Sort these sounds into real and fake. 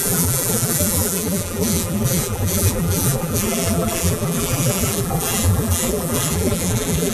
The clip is fake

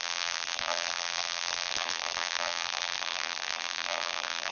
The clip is fake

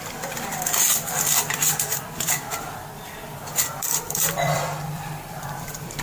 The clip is fake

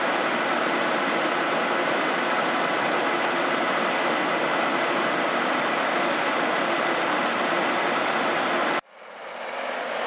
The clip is fake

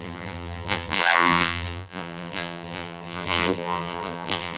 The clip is fake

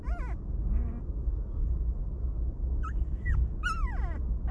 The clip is real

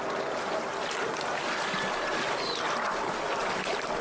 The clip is real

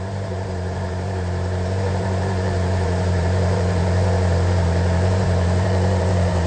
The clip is fake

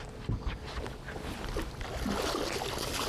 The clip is real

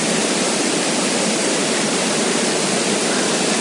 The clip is fake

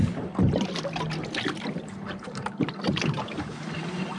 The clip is real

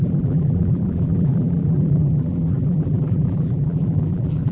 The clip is fake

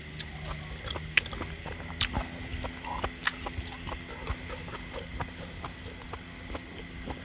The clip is real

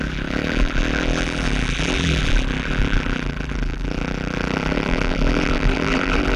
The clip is fake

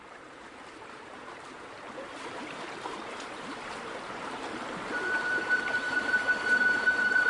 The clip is fake